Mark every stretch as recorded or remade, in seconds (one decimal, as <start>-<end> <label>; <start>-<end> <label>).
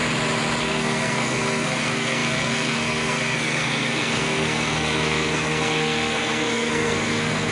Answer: 0.0-0.6 recorded; 0.6-7.5 remade